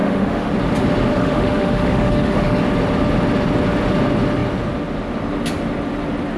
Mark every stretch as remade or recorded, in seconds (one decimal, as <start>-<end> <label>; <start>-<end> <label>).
0.0-0.5 remade; 0.5-1.1 recorded; 1.1-2.6 remade; 2.6-6.4 recorded